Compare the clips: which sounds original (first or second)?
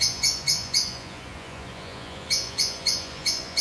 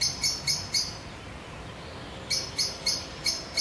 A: second